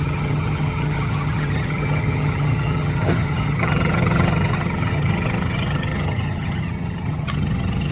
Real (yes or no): no